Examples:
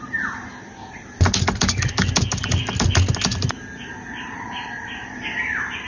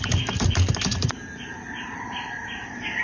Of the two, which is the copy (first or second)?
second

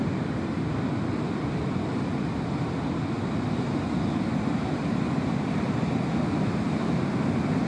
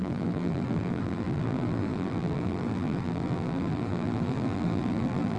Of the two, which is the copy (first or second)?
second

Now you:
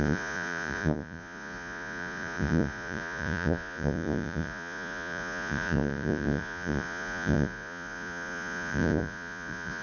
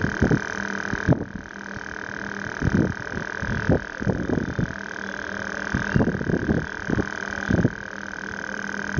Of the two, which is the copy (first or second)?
first